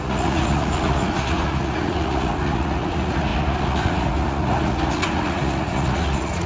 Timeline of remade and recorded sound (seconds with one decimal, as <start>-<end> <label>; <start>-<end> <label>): 0.0-6.5 remade